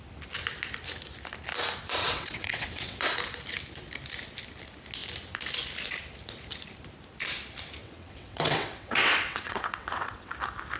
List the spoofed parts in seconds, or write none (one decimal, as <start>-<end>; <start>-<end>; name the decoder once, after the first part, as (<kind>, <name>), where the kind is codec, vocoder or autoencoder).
2.0-3.0 (vocoder, WaveNeXt); 7.8-10.3